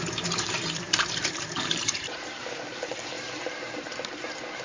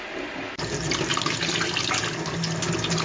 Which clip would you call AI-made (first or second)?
first